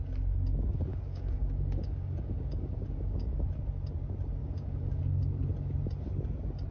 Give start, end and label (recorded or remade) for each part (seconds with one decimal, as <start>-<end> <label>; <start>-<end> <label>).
0.0-0.9 recorded; 0.9-3.5 remade; 3.5-4.4 recorded; 4.4-5.0 remade; 5.0-6.7 recorded